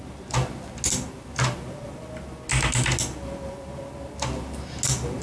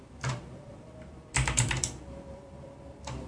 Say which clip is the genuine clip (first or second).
first